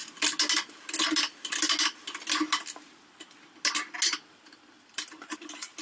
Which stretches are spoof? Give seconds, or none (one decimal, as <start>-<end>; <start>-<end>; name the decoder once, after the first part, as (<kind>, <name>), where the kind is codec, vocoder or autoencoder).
none